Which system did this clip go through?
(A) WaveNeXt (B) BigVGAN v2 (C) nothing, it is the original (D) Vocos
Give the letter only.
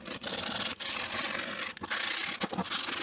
C